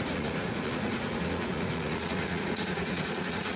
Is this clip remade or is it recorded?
remade